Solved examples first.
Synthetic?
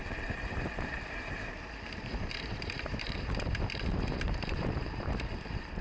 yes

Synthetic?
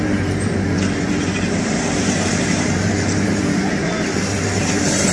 yes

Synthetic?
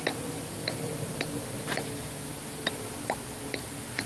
yes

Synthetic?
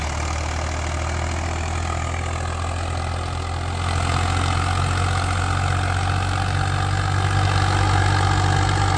no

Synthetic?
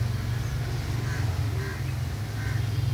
no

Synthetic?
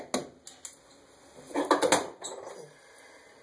no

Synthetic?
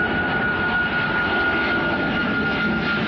no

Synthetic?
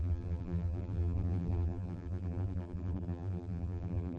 yes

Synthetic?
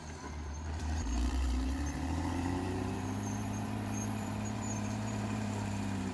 yes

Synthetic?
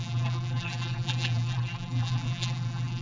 yes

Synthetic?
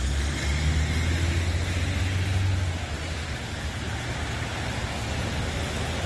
no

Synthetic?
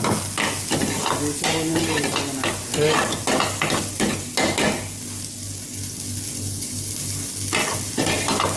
no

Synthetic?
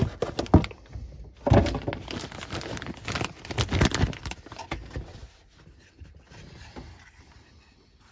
no